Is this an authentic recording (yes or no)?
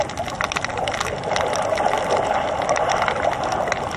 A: yes